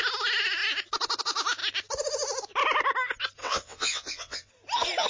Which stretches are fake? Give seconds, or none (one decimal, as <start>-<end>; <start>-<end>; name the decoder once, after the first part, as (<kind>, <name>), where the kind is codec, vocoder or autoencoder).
3.4-4.5 (vocoder, WaveNeXt)